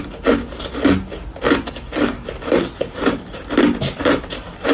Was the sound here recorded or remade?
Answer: recorded